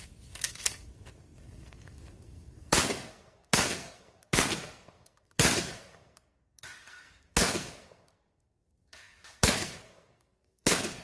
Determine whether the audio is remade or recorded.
remade